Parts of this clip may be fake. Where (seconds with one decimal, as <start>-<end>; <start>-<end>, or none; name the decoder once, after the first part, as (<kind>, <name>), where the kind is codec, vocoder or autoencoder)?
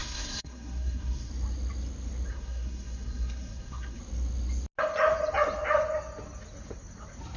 0.0-1.3 (codec, SNAC); 2.3-4.0